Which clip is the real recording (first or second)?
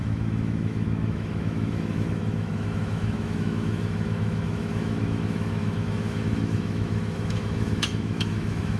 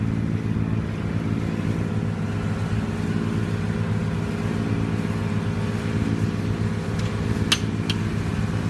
second